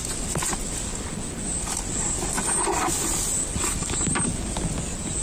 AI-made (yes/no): no